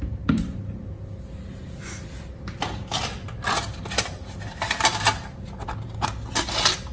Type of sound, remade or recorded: recorded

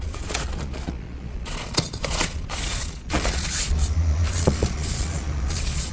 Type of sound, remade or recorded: remade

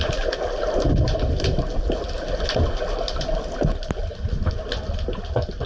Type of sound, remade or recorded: recorded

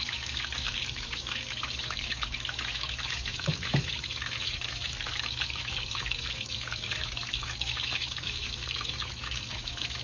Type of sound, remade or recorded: remade